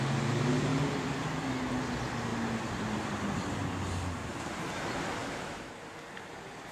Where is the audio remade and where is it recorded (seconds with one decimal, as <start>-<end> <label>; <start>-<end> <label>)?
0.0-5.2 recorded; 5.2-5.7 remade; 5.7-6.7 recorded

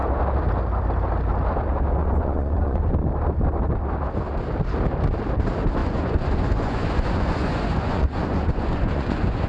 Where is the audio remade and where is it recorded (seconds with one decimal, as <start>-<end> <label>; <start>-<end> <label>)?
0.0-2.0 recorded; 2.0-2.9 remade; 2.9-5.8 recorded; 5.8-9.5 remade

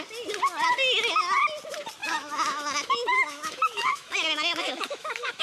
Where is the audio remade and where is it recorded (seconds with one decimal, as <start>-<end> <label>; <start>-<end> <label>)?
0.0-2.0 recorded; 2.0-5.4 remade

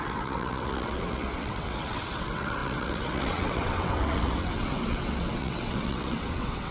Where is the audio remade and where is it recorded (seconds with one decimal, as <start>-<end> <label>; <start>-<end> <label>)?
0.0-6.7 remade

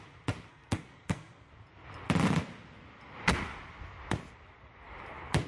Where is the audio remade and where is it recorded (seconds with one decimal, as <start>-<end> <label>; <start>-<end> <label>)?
0.0-0.5 recorded; 0.5-1.5 remade; 1.5-5.5 recorded

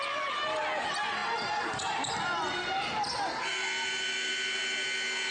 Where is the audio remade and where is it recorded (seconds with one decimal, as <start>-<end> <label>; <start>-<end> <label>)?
0.0-5.3 recorded